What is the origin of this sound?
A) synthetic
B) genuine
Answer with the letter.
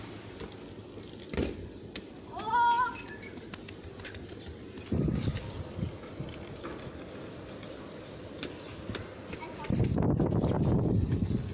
B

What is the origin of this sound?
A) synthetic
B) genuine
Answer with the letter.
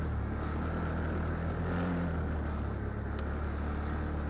B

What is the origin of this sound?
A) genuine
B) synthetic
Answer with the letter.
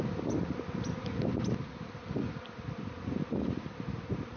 A